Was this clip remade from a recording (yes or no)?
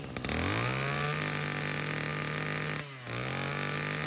no